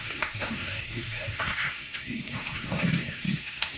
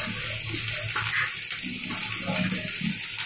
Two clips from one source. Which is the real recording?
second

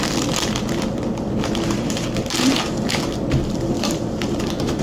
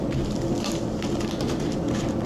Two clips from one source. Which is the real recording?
second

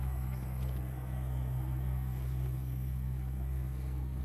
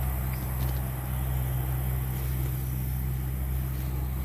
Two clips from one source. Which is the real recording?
second